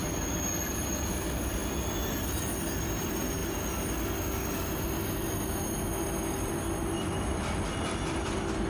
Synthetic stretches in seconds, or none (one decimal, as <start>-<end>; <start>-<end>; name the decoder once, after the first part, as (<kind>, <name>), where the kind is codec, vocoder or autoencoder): none

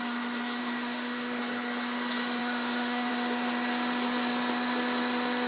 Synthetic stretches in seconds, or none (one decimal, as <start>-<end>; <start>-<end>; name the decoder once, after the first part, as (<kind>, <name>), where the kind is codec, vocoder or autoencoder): 0.6-1.4 (autoencoder, DAC-VAE); 2.4-3.1